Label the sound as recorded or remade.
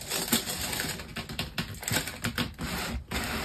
recorded